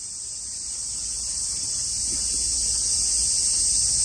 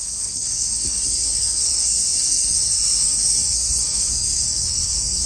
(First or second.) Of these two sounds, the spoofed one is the second